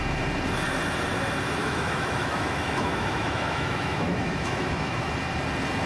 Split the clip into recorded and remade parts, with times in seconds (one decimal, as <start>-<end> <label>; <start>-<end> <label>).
0.0-1.6 recorded; 1.6-5.1 remade; 5.1-5.9 recorded